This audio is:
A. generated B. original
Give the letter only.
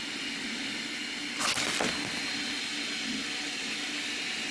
B